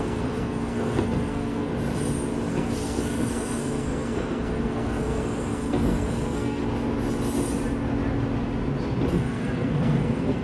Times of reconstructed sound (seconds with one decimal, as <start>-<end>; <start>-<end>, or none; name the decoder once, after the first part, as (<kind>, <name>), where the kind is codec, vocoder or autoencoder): 0.0-1.7 (codec, SNAC); 2.5-6.6; 9.1-10.4